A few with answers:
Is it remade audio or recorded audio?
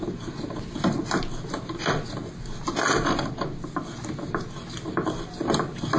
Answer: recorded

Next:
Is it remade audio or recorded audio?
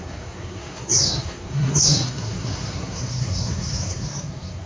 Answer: remade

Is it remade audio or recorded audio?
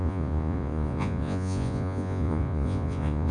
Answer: remade